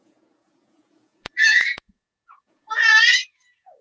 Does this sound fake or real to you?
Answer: fake